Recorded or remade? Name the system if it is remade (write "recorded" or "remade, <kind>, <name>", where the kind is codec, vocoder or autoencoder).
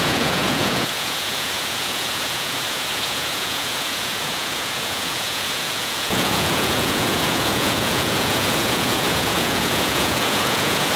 remade, vocoder, Vocos